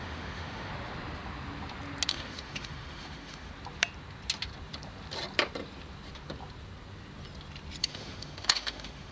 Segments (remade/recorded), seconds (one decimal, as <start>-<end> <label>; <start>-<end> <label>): 0.0-0.7 remade; 0.7-2.1 recorded; 2.1-3.5 remade; 3.5-7.8 recorded; 7.8-9.1 remade